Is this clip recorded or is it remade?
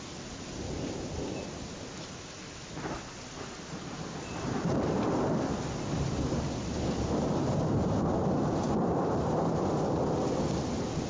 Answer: recorded